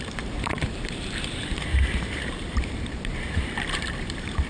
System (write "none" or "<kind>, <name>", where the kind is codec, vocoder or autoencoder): vocoder, BigVGAN v2